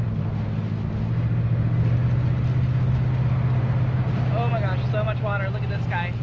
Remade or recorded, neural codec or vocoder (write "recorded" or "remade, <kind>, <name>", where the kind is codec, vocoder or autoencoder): recorded